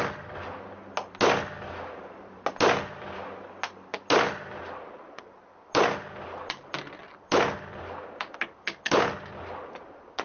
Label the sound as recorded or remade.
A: recorded